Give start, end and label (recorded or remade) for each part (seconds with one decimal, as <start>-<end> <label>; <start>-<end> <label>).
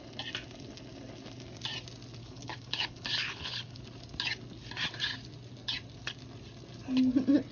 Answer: 0.0-2.2 recorded; 2.2-3.8 remade; 3.8-7.5 recorded